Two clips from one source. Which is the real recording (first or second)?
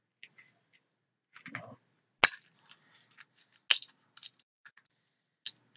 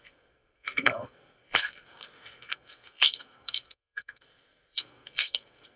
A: first